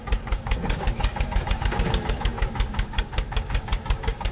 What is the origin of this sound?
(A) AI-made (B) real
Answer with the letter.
A